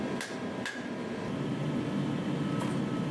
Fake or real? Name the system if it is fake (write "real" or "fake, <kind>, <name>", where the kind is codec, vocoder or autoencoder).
real